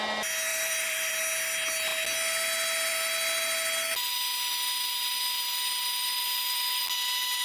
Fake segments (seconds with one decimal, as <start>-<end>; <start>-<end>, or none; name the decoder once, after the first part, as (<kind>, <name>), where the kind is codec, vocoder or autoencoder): 0.5-1.2 (vocoder, BigVGAN v2); 6.2-6.8